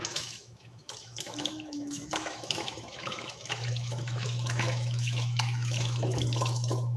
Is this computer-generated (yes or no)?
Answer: yes